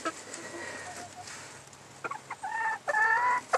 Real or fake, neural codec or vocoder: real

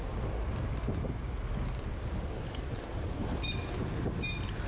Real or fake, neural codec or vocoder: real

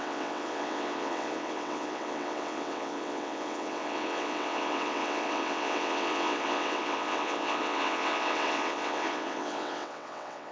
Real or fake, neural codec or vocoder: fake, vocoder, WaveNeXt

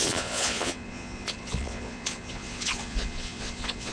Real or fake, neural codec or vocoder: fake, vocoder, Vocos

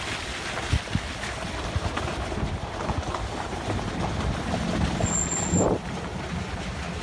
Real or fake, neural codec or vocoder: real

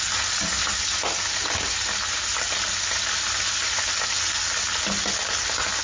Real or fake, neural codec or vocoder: real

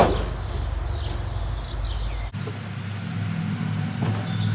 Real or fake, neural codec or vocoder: real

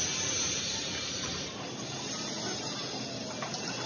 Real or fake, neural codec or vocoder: real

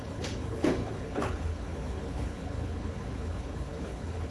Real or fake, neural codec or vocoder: fake, codec, HILCodec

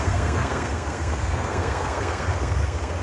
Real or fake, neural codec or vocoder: fake, codec, SNAC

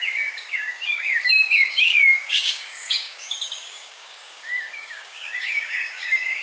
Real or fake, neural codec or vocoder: fake, codec, DAC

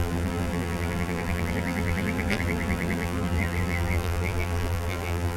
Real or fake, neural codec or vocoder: fake, vocoder, BigVGAN v2